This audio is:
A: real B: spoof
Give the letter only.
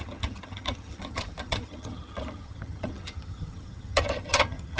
B